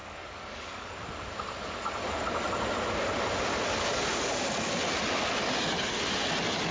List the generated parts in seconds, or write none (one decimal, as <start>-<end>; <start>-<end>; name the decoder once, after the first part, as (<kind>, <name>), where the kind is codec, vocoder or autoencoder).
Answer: 0.0-0.9 (codec, DAC); 4.1-4.7